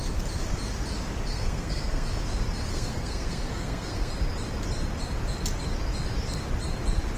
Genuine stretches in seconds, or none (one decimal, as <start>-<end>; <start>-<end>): 0.0-1.3; 2.2-2.7; 4.1-7.2